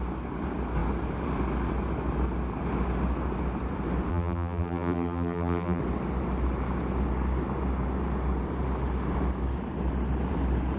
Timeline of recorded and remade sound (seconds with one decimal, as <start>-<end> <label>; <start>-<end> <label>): 0.0-4.1 recorded; 4.1-5.8 remade; 5.8-10.8 recorded